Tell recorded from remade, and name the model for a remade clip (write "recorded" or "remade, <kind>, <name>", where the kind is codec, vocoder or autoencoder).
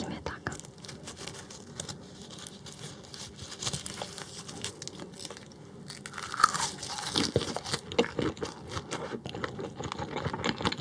recorded